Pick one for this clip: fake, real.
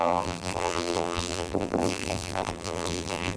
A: fake